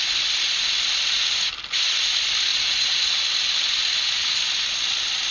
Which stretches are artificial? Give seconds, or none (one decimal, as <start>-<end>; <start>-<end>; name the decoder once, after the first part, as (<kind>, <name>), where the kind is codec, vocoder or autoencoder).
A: 2.5-3.2 (vocoder, Vocos)